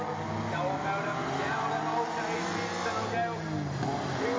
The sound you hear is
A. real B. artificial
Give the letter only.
A